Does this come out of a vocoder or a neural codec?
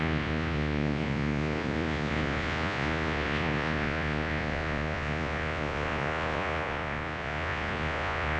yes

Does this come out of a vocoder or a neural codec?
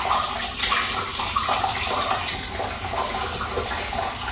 no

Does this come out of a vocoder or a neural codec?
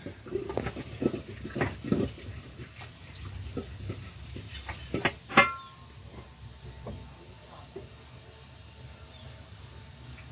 no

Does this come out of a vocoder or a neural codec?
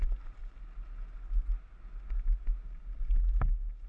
no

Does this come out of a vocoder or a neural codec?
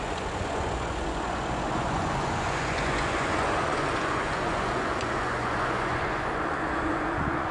yes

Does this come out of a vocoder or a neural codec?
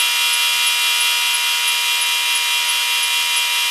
no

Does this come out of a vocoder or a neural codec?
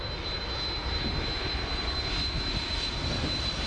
no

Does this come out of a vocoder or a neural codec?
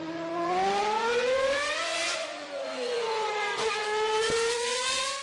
yes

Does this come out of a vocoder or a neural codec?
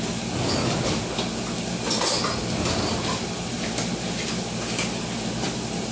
no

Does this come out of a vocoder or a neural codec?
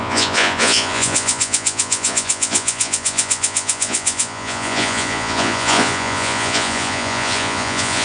yes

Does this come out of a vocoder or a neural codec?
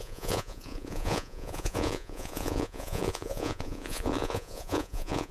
yes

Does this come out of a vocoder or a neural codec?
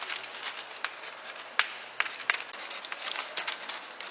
no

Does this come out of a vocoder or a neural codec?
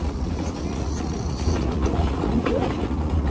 yes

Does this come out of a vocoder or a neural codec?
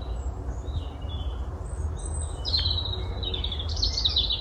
no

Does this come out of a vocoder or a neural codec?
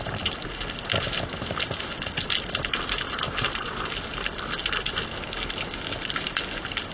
no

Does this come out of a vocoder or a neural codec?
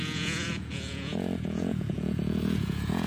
yes